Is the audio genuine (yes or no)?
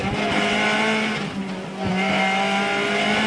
yes